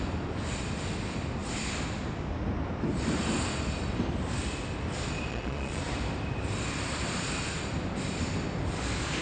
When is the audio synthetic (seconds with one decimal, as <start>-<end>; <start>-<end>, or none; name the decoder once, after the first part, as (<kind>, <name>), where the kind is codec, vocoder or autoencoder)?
5.3-5.8 (vocoder, Vocos)